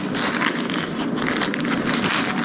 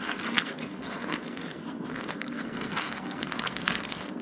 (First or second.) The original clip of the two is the first